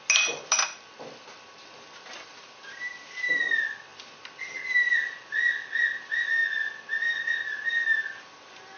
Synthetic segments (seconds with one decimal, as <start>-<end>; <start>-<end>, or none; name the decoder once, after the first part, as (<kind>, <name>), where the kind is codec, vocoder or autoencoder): 5.4-6.0 (vocoder, BigVGAN v2)